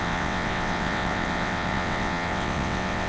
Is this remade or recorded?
remade